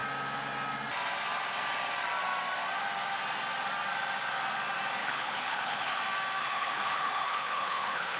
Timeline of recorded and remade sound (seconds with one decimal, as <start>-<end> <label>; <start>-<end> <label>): 0.0-5.0 recorded; 5.0-6.0 remade; 6.0-6.4 recorded; 6.4-8.2 remade